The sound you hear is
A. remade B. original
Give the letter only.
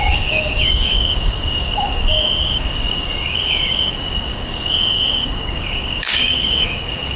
A